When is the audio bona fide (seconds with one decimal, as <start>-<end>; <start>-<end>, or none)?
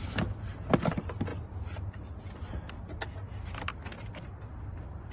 0.0-5.1